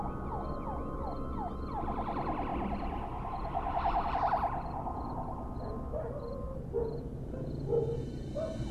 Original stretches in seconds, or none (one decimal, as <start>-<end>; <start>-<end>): 0.0-8.7